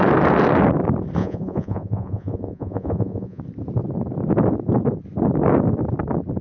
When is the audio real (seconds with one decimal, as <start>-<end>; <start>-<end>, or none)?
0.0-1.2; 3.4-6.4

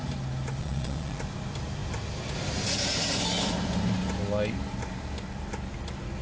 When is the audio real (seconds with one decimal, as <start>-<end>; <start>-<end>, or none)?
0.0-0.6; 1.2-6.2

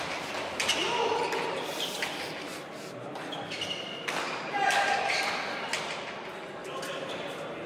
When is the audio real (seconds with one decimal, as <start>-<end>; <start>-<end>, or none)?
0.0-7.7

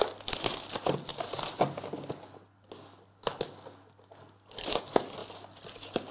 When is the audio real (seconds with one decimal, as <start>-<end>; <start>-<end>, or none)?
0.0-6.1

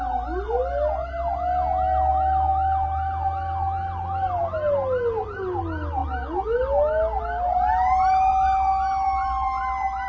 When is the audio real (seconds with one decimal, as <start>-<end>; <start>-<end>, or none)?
0.0-10.1

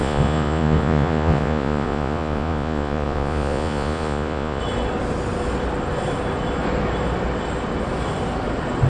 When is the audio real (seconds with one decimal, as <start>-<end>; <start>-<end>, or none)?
4.6-8.9

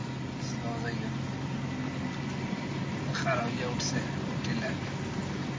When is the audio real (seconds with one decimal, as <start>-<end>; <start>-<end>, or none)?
0.0-5.6